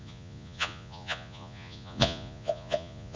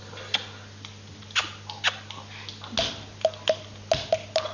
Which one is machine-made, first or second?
first